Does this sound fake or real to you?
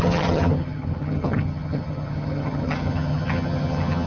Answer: fake